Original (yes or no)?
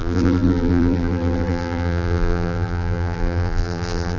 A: no